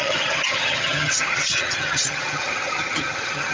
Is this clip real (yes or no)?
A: no